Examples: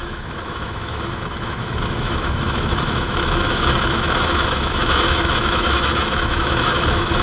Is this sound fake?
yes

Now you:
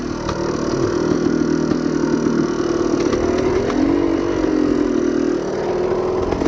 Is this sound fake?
no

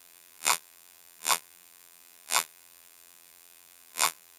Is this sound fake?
yes